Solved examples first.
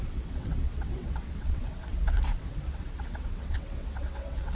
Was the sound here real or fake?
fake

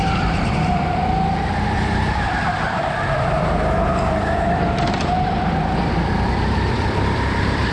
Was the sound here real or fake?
fake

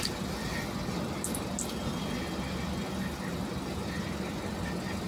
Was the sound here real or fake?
real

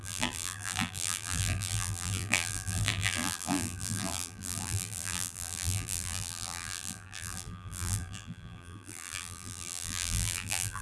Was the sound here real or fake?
fake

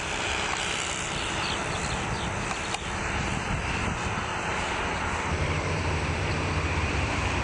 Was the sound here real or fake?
fake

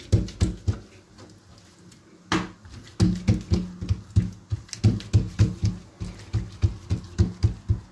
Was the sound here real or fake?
real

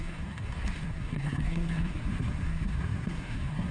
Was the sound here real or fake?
fake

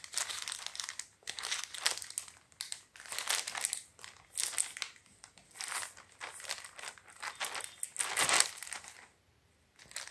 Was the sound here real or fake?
real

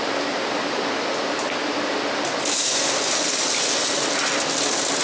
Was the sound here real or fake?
real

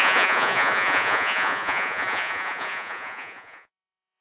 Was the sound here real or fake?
fake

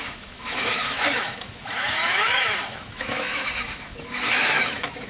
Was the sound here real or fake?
fake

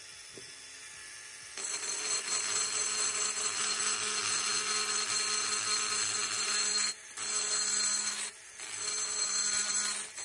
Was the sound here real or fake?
real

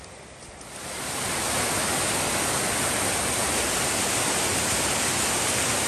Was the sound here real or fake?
real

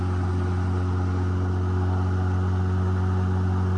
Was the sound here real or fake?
real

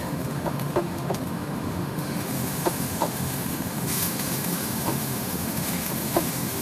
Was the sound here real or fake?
fake